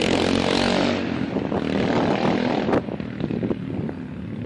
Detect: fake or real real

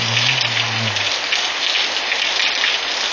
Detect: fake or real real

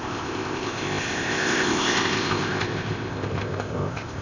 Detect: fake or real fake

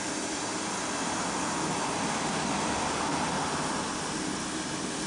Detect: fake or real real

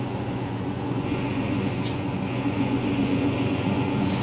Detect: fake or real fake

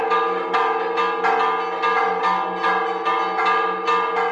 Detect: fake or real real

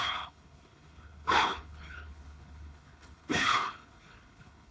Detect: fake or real fake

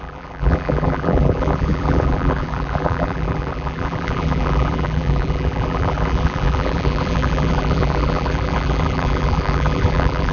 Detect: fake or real fake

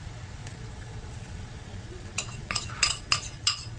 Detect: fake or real fake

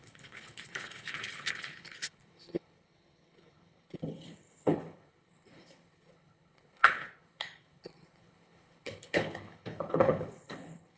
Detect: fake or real fake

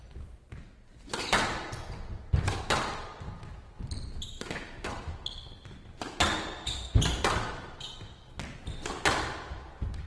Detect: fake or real real